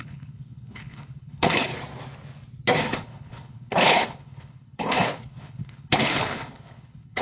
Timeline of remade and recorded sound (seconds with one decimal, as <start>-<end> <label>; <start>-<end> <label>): 0.0-1.7 remade; 1.7-2.8 recorded; 2.8-7.2 remade